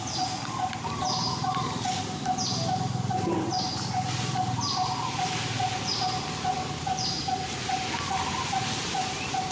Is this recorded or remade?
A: recorded